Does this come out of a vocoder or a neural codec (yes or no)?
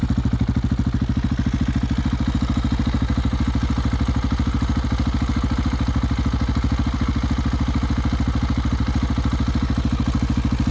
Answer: no